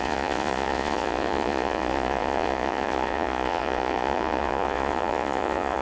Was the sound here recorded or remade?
remade